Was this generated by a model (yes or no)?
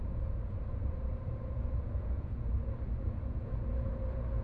yes